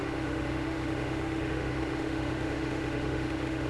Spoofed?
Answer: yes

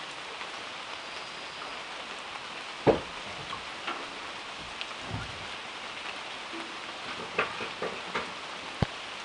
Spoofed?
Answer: no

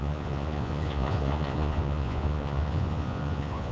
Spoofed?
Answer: yes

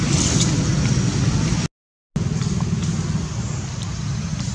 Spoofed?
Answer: no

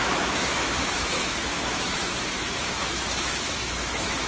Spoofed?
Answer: yes